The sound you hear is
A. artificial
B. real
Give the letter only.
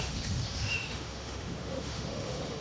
A